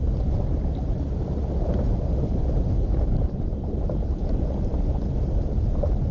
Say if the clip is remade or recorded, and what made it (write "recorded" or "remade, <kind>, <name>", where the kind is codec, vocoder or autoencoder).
recorded